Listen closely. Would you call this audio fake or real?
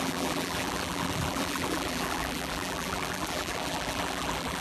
fake